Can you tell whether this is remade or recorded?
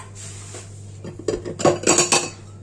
recorded